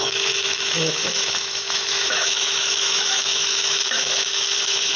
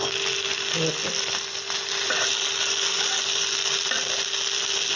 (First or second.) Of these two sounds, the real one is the second